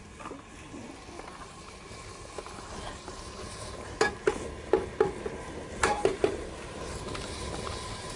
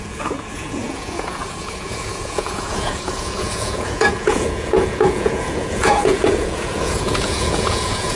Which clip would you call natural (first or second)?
first